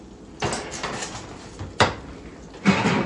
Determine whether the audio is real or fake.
real